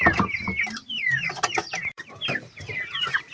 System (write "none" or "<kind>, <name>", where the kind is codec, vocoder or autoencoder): vocoder, BigVGAN v2